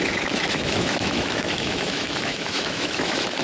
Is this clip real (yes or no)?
no